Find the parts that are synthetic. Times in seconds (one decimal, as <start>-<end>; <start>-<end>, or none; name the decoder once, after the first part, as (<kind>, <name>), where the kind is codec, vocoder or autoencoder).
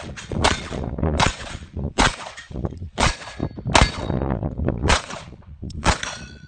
0.0-3.4 (vocoder, Vocos); 3.9-6.5